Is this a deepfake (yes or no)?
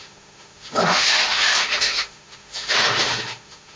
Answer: yes